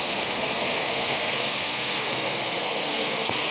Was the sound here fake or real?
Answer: fake